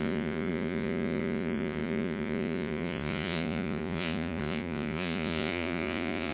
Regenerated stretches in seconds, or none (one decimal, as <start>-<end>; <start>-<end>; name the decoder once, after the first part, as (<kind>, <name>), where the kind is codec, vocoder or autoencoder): 0.0-6.3 (vocoder, Vocos)